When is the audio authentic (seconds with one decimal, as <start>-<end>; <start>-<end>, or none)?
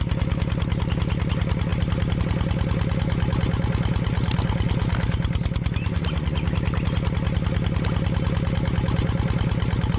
0.0-10.0